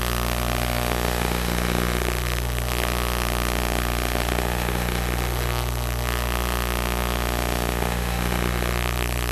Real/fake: fake